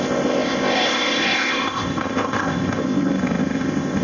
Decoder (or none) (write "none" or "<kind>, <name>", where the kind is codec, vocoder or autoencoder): codec, ZipCodec